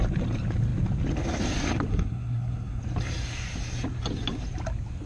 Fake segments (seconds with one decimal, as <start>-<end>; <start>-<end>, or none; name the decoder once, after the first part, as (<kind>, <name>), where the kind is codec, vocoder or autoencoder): 1.9-2.8 (codec, SNAC)